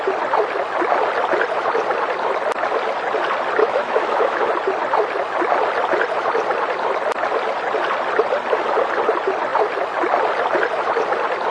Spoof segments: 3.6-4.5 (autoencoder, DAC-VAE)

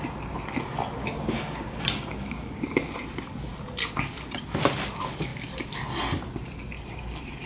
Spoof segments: 1.0-2.6 (codec, DAC)

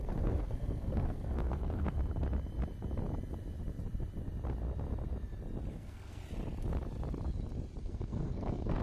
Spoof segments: 0.0-2.0 (codec, SNAC); 5.7-6.2; 7.8-8.8

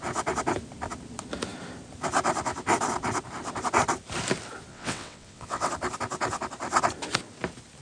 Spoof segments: 4.7-5.7 (vocoder, WaveNeXt)

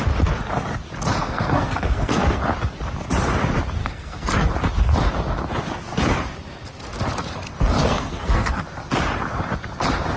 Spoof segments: 1.2-2.4 (codec, SNAC); 3.8-4.5; 7.8-8.6

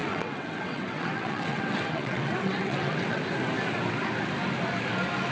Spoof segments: 0.0-3.2 (vocoder, WaveNeXt)

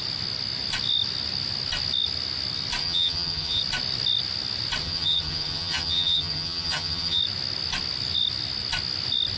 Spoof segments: 2.8-3.6 (vocoder, HiFi-GAN); 4.8-7.2